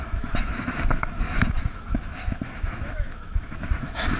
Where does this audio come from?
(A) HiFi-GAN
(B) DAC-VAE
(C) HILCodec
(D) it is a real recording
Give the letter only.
B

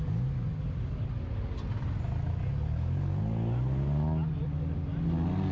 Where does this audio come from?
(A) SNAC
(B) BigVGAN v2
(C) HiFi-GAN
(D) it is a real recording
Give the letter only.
D